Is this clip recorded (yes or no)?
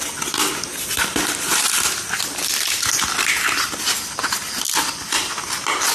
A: yes